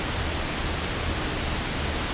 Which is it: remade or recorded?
recorded